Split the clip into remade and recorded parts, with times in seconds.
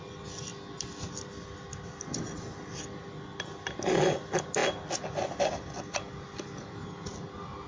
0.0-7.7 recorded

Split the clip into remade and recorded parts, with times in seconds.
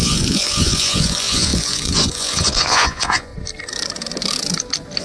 0.0-3.3 remade; 3.3-5.0 recorded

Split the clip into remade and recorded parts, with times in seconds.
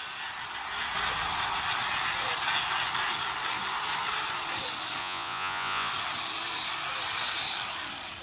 0.0-5.0 recorded; 5.0-5.9 remade; 5.9-8.2 recorded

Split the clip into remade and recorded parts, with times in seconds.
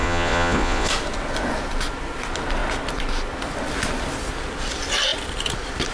0.0-0.9 remade; 0.9-5.9 recorded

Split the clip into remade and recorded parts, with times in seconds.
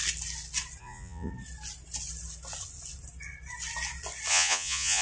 0.0-0.8 recorded; 0.8-1.3 remade; 1.3-4.3 recorded; 4.3-5.0 remade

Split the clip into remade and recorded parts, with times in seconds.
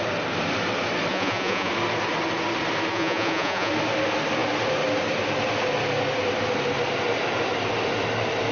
0.0-1.1 recorded; 1.1-1.7 remade; 1.7-2.9 recorded; 2.9-3.7 remade; 3.7-8.5 recorded